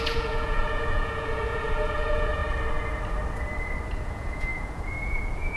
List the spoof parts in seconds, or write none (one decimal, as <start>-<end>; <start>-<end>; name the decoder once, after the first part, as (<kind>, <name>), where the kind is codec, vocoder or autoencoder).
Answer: 0.0-2.4 (vocoder, Vocos); 3.9-5.6